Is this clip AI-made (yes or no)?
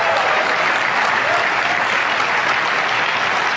no